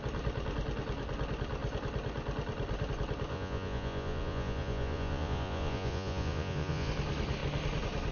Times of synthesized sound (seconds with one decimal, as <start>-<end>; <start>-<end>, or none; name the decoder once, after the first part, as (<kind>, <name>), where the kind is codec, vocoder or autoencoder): 3.3-6.9 (vocoder, Vocos)